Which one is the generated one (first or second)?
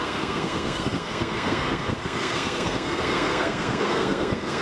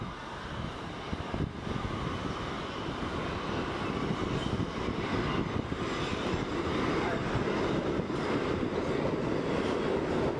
first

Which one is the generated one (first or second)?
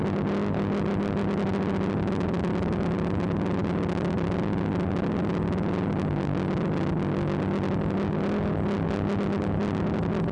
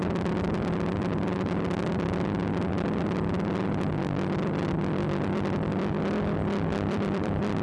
second